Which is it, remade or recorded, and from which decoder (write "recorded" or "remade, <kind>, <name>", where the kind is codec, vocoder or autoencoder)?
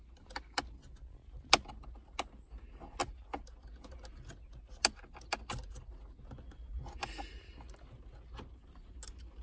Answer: recorded